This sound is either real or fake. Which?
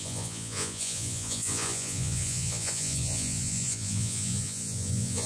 fake